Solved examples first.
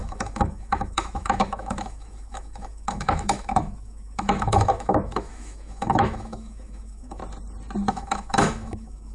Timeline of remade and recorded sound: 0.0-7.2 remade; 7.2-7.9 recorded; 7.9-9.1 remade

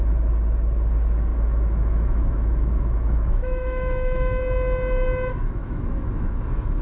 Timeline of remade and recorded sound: 0.0-1.3 recorded; 1.3-4.4 remade; 4.4-5.3 recorded; 5.3-6.8 remade

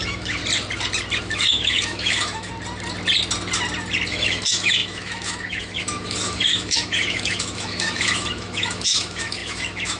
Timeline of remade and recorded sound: 0.0-0.4 remade; 0.4-1.2 recorded; 1.2-2.5 remade; 2.5-4.1 recorded; 4.1-10.0 remade

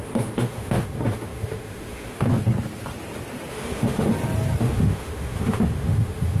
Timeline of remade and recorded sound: 0.0-2.3 remade; 2.3-3.5 recorded; 3.5-4.1 remade; 4.1-4.6 recorded; 4.6-6.4 remade